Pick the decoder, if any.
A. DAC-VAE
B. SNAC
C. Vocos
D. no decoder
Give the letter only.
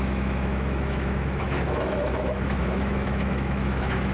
A